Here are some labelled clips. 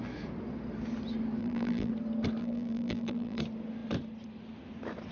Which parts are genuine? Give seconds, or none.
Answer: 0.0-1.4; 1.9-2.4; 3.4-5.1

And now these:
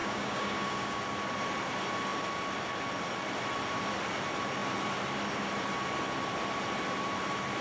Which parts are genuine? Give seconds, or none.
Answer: 1.0-7.6

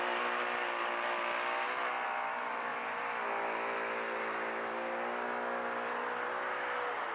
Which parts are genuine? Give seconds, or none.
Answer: 0.0-7.1

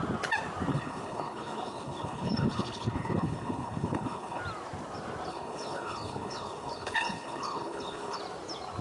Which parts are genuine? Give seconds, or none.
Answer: 0.0-0.7; 4.4-5.3; 8.2-8.8

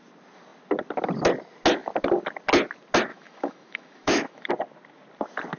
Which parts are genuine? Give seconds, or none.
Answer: 0.0-3.1; 4.5-5.6

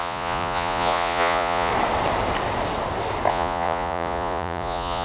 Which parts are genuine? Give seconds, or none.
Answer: 1.7-3.3

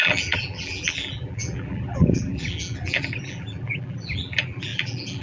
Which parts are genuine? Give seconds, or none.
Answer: none

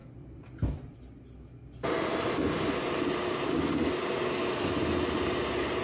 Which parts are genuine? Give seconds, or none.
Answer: 0.0-5.8